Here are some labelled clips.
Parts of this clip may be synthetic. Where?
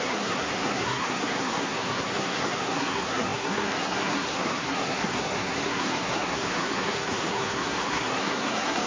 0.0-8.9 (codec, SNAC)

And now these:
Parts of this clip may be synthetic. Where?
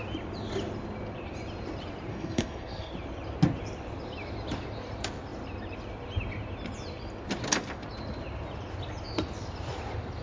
2.1-2.9 (codec, SNAC)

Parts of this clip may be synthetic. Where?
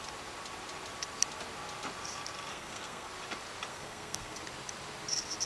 2.5-3.1 (codec, SNAC); 3.7-4.4